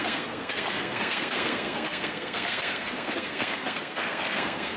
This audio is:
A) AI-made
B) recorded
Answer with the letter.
A